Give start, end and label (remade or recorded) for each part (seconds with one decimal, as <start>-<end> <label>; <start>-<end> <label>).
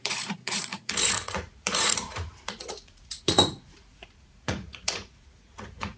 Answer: 0.0-6.0 remade